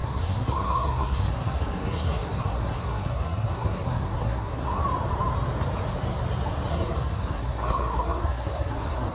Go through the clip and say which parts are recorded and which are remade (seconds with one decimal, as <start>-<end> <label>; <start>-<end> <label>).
0.0-4.8 remade; 4.8-6.7 recorded; 6.7-9.1 remade